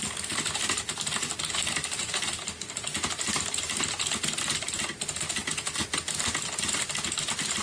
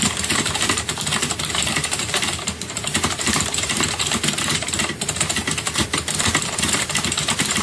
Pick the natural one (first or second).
first